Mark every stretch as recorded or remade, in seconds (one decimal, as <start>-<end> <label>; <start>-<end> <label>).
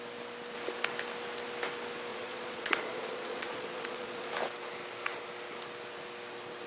0.0-2.1 recorded; 2.1-4.3 remade; 4.3-6.7 recorded